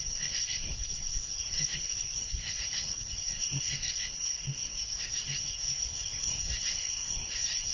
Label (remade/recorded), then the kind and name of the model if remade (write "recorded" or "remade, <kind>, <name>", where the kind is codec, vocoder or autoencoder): remade, codec, SNAC